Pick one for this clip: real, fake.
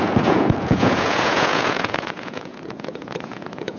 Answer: fake